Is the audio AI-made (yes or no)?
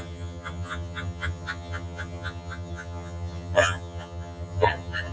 yes